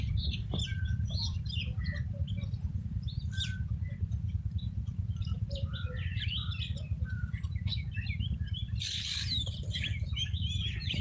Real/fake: fake